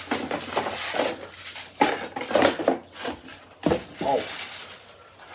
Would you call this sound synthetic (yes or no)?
no